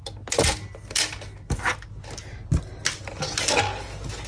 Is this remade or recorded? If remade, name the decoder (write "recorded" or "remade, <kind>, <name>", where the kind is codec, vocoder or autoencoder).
recorded